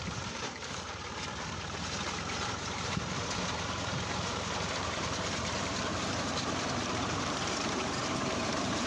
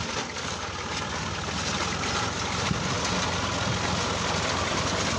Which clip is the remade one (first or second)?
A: first